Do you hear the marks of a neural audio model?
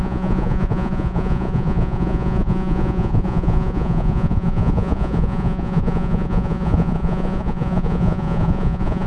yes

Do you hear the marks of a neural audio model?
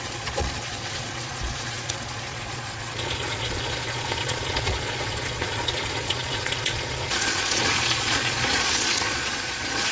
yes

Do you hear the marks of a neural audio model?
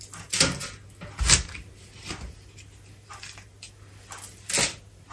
no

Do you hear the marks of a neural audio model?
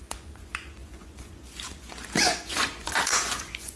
yes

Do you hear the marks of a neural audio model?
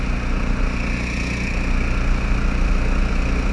no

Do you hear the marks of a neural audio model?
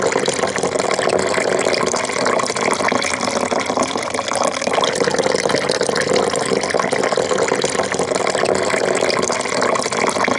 no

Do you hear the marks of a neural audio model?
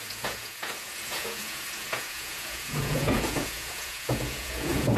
yes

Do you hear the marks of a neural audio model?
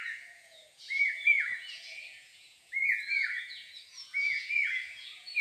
yes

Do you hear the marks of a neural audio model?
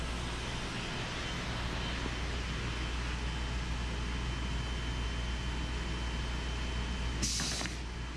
no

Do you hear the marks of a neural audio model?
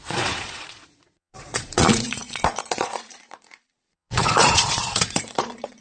yes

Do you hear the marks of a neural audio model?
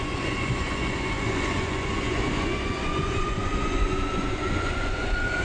yes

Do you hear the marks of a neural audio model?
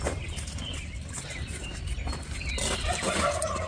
no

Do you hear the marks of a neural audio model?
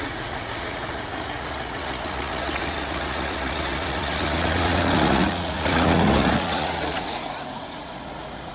yes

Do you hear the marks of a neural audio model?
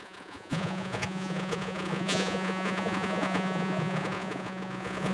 yes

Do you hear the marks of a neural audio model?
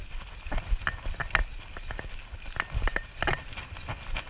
no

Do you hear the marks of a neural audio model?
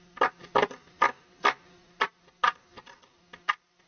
no